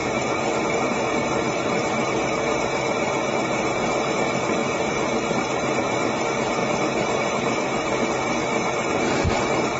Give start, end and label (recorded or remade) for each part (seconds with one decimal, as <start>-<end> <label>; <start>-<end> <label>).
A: 0.0-9.8 recorded